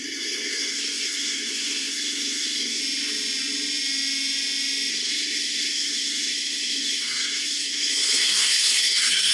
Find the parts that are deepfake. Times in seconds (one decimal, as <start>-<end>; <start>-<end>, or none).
0.0-2.8; 4.9-9.3